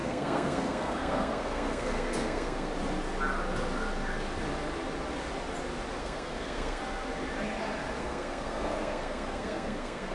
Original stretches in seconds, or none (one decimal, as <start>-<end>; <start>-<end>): 2.7-6.0; 6.8-8.0